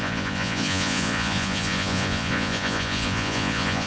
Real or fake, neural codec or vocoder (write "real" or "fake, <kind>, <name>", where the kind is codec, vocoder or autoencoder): fake, vocoder, Vocos